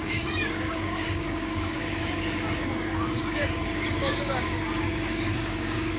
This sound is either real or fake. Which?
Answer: fake